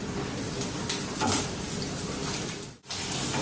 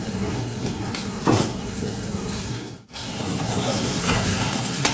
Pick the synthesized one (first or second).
second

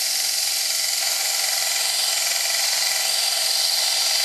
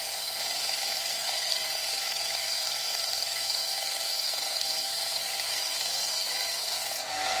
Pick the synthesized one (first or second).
second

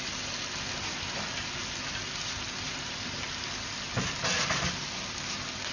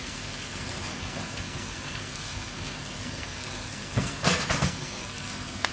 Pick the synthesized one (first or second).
second